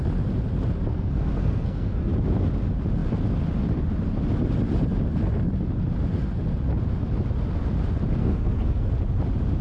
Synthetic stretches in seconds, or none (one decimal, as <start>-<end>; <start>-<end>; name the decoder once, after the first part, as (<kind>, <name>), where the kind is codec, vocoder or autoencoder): 0.9-2.1 (codec, SNAC); 8.2-8.9